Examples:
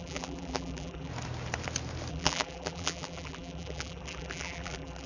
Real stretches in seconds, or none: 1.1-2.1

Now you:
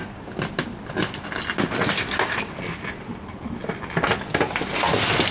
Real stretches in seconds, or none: 0.0-5.3

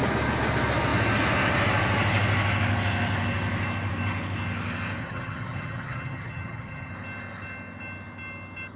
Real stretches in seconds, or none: 0.0-5.0; 6.9-8.8

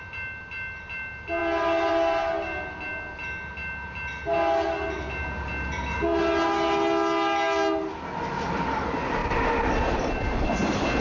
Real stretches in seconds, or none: 0.0-11.0